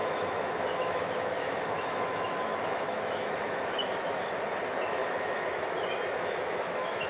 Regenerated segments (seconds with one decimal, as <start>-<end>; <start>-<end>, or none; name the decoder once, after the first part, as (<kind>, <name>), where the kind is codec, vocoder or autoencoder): 0.0-4.3 (autoencoder, DAC-VAE); 5.0-7.1